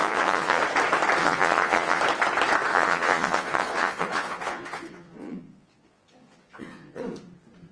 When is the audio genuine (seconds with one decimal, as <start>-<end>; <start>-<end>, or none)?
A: 0.6-1.2; 2.0-2.7; 7.0-7.7